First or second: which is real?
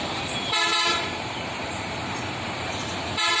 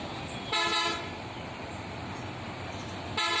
second